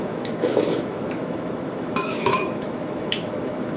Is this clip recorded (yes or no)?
no